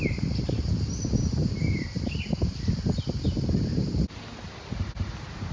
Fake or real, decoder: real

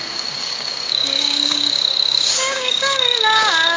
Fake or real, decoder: fake, codec, DAC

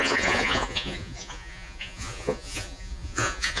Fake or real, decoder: fake, vocoder, Vocos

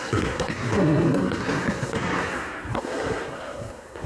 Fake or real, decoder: fake, codec, SNAC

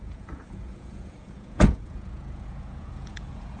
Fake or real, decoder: fake, vocoder, Vocos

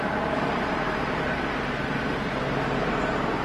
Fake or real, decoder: real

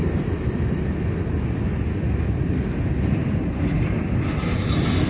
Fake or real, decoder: real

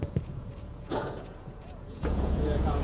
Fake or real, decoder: fake, vocoder, Vocos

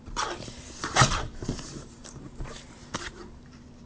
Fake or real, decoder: fake, vocoder, BigVGAN v2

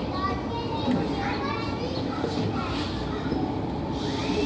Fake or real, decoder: real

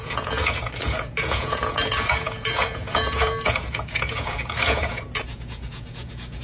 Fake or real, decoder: fake, vocoder, Vocos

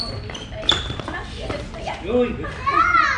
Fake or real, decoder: real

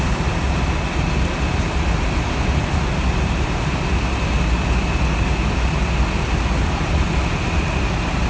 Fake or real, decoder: real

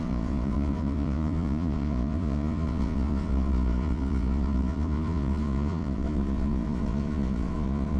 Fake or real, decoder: fake, vocoder, Vocos